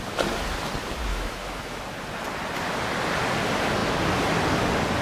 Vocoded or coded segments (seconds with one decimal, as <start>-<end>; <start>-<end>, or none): 1.1-1.8